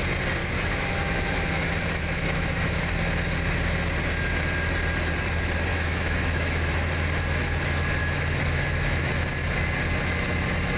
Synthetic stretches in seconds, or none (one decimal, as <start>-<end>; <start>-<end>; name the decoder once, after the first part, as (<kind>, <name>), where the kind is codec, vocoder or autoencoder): 0.4-2.9 (autoencoder, DAC-VAE); 5.7-6.7; 8.0-9.1